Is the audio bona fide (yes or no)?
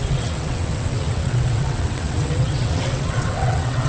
no